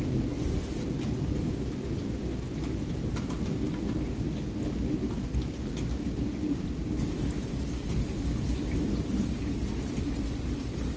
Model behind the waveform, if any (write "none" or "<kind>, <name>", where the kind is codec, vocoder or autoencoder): none